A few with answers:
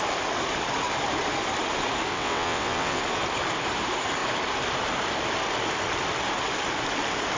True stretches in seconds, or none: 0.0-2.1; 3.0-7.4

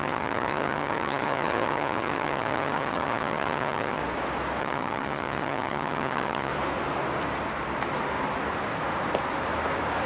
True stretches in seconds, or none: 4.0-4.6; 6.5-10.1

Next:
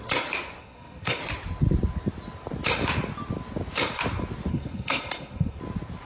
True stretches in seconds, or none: 0.0-0.6; 1.2-4.5; 5.6-6.0

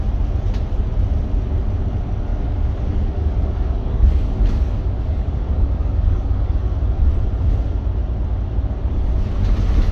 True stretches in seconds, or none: 0.0-2.3; 6.6-9.9

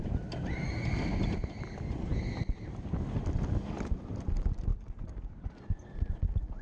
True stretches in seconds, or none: 0.0-4.7; 5.6-6.6

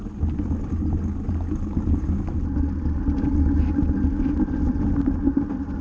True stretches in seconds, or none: 0.0-5.8

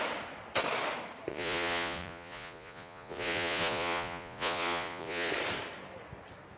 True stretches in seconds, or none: 0.0-1.3; 5.3-6.6